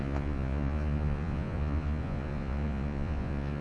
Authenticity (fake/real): fake